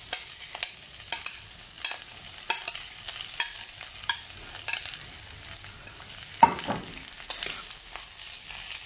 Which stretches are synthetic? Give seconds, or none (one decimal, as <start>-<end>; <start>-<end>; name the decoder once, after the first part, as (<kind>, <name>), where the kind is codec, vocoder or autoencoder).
none